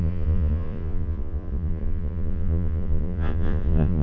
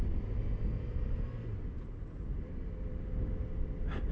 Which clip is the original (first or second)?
second